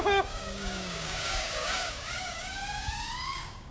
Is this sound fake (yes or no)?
yes